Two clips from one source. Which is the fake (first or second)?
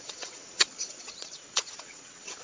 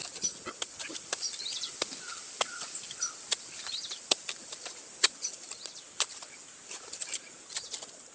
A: first